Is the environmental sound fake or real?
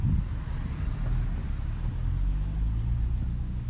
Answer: real